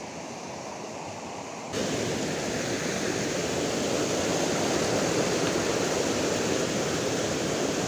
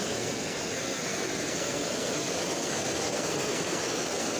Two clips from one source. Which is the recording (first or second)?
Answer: first